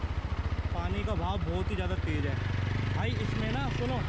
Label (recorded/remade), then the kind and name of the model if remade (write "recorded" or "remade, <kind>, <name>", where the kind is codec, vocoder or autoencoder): recorded